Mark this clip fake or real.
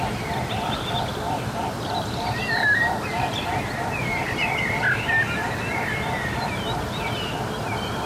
fake